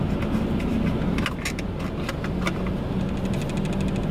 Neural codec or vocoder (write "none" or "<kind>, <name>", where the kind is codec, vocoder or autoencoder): none